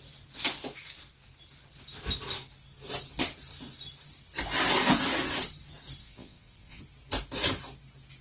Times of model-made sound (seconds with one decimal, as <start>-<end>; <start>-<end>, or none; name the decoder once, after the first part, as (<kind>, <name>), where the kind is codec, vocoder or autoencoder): 6.0-6.8 (vocoder, Vocos)